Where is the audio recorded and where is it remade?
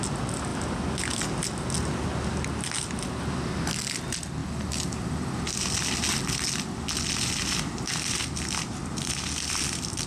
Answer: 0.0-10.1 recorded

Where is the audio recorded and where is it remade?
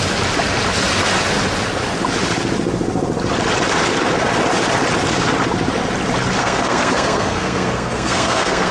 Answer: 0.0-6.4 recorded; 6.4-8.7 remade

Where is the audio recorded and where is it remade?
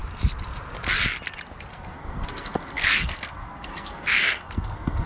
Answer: 0.0-1.7 recorded; 1.7-5.1 remade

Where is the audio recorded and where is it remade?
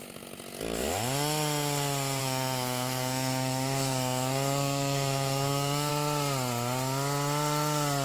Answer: 0.0-2.2 recorded; 2.2-5.9 remade; 5.9-8.0 recorded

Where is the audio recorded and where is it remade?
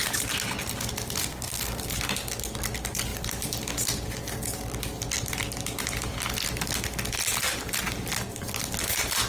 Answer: 0.0-1.2 recorded; 1.2-1.8 remade; 1.8-9.3 recorded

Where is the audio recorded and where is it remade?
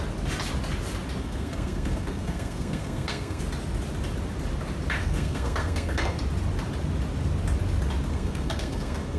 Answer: 0.0-1.2 recorded; 1.2-3.4 remade; 3.4-5.0 recorded; 5.0-6.2 remade; 6.2-8.1 recorded; 8.1-9.2 remade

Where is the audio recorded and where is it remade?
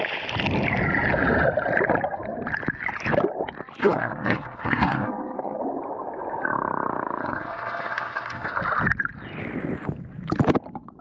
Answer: 0.0-3.8 recorded; 3.8-5.6 remade; 5.6-7.2 recorded; 7.2-8.6 remade; 8.6-11.0 recorded